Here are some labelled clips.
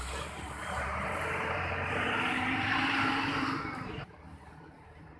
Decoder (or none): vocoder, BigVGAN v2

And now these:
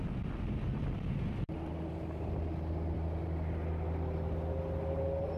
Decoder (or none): none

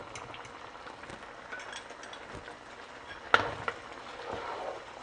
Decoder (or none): none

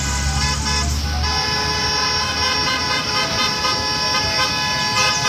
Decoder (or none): none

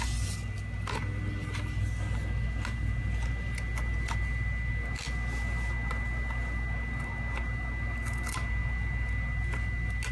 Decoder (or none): none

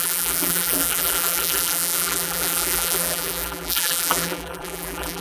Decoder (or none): vocoder, BigVGAN v2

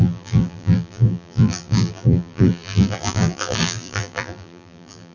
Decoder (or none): vocoder, BigVGAN v2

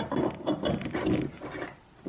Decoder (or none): none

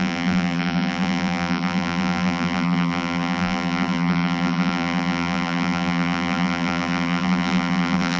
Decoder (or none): vocoder, BigVGAN v2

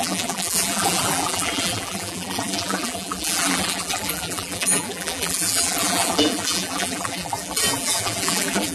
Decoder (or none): vocoder, BigVGAN v2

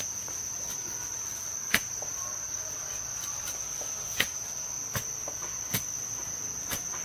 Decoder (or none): none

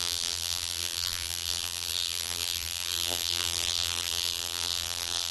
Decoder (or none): vocoder, BigVGAN v2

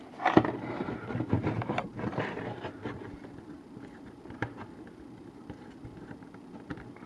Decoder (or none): vocoder, BigVGAN v2